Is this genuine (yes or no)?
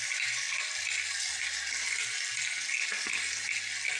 yes